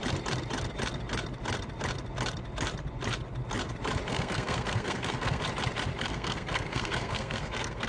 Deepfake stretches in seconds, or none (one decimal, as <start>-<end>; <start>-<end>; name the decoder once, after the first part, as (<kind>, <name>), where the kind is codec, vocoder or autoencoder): 4.1-5.4 (codec, SNAC); 6.1-7.9

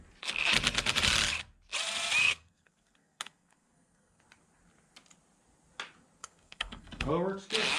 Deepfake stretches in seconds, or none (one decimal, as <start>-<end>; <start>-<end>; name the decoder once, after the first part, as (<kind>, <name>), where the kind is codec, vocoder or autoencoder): 2.2-4.2 (codec, SNAC); 6.2-7.1

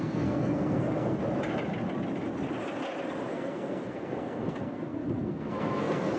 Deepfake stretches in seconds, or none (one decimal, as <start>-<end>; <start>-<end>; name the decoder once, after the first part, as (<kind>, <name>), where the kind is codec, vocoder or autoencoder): 0.0-1.2 (codec, SNAC); 3.3-6.2

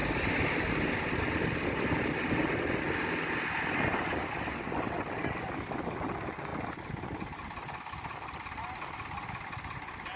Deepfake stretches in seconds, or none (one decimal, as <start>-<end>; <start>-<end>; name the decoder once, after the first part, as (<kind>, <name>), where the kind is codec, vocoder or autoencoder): none

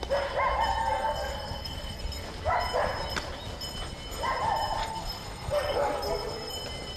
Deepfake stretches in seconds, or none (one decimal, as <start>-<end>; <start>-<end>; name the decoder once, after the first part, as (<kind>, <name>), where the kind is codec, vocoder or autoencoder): 0.8-2.0 (codec, SNAC); 4.8-6.5

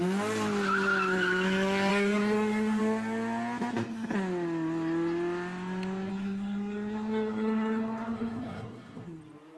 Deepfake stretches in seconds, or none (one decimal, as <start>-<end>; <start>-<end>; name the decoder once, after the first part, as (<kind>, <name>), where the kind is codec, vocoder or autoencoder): 1.9-2.8 (codec, SNAC); 6.1-9.2

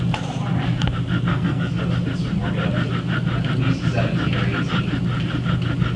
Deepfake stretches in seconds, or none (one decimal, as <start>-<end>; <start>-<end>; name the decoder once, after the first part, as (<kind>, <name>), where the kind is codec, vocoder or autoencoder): 1.3-1.8 (codec, SNAC)